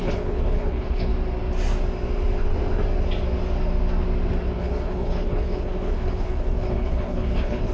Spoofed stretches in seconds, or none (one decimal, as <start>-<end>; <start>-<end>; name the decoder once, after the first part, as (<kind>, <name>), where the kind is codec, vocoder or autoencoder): 0.0-1.1 (codec, HILCodec); 4.6-7.7